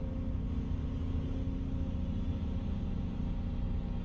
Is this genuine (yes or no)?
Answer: yes